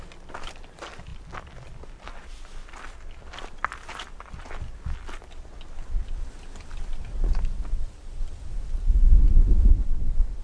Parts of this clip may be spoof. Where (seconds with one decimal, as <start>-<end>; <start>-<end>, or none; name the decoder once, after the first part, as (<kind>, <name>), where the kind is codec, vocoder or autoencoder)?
none